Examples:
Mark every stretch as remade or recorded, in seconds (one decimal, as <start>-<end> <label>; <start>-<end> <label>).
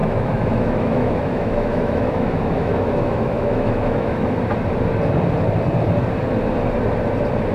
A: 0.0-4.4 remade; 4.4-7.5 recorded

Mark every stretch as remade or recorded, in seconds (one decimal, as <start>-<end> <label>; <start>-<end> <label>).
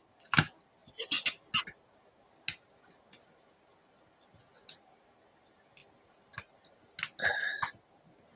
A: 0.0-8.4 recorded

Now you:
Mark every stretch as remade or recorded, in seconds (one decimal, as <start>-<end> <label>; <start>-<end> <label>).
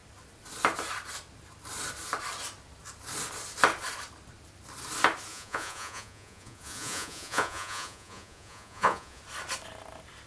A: 0.0-5.3 recorded; 5.3-9.2 remade; 9.2-10.3 recorded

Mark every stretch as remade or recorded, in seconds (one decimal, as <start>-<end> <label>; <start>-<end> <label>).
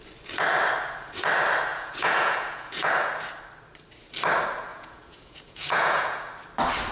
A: 0.0-1.7 recorded; 1.7-2.9 remade; 2.9-4.7 recorded; 4.7-6.3 remade; 6.3-6.9 recorded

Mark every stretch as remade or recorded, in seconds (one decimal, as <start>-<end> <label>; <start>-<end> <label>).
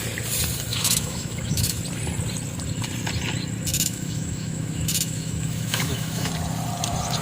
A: 0.0-0.7 recorded; 0.7-1.8 remade; 1.8-3.7 recorded; 3.7-6.3 remade; 6.3-7.2 recorded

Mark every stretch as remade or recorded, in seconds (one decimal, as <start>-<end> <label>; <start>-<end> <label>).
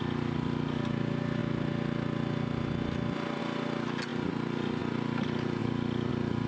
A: 0.0-4.1 recorded; 4.1-4.8 remade; 4.8-5.6 recorded; 5.6-6.1 remade; 6.1-6.5 recorded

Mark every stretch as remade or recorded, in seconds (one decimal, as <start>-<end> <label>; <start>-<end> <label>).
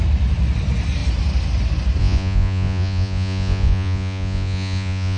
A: 0.0-2.0 recorded; 2.0-5.2 remade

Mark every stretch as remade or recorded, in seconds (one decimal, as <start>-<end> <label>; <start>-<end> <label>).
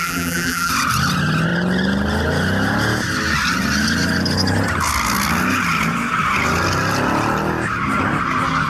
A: 0.0-0.7 remade; 0.7-8.7 recorded